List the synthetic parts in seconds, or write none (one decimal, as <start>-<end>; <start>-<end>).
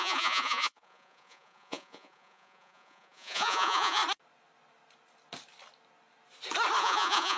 0.0-4.0; 6.8-7.4